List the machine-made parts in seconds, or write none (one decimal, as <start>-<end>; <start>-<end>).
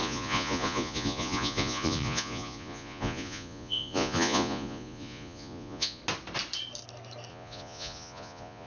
0.0-6.0; 7.3-8.7